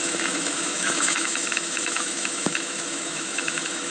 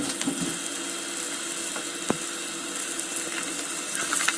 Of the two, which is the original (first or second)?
second